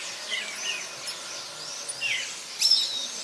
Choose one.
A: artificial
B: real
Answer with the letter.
B